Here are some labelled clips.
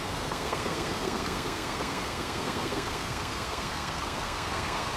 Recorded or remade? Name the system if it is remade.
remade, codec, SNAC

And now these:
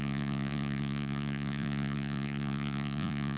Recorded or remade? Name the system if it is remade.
remade, vocoder, Vocos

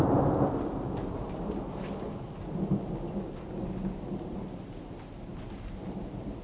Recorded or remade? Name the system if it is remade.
recorded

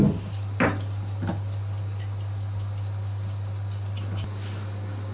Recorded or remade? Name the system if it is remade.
recorded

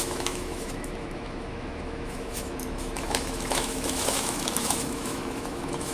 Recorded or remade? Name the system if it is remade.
remade, autoencoder, DAC-VAE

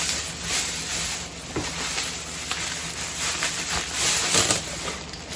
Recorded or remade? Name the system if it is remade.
recorded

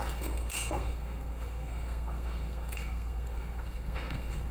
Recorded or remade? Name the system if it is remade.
remade, codec, SNAC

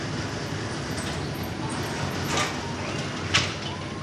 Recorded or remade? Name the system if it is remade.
recorded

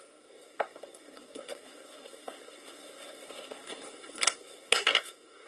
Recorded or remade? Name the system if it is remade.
remade, codec, SNAC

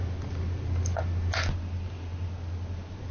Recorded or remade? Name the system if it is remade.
recorded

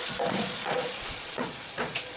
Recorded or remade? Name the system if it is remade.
remade, vocoder, Vocos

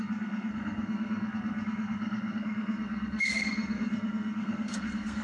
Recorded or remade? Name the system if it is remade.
remade, codec, SNAC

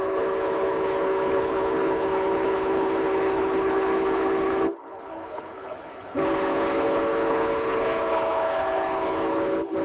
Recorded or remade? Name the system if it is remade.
remade, codec, HILCodec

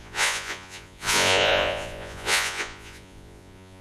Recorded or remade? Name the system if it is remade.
remade, vocoder, Vocos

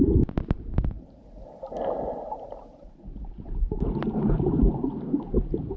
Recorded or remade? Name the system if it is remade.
remade, vocoder, BigVGAN v2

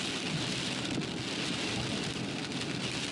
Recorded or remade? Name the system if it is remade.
recorded